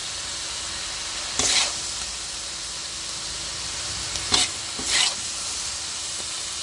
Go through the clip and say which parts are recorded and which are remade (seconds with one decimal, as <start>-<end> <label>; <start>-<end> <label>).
0.0-6.6 recorded